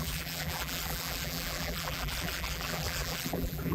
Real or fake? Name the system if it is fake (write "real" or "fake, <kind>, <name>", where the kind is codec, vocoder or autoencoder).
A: fake, vocoder, BigVGAN v2